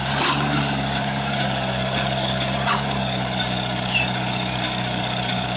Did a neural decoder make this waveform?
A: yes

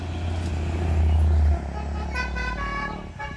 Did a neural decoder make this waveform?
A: no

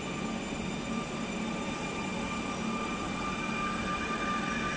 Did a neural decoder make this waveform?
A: no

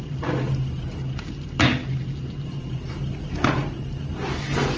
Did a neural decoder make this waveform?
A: no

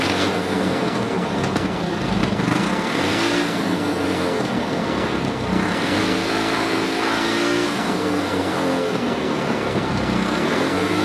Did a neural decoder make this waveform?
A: yes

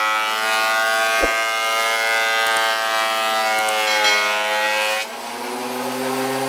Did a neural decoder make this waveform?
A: no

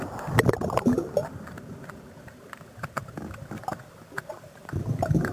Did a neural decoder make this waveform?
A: no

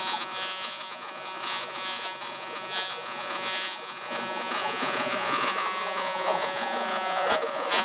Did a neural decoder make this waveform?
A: yes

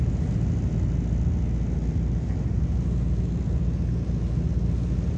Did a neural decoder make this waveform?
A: no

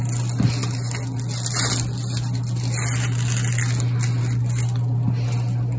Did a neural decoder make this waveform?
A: no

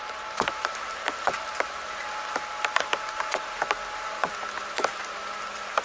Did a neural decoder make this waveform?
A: no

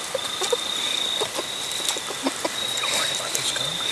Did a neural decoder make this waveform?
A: no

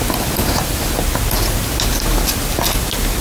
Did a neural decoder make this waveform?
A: no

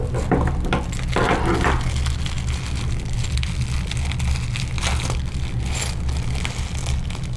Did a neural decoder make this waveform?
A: no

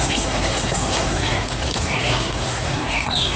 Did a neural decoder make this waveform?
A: yes